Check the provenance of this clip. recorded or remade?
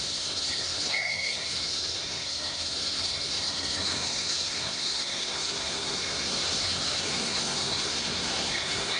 remade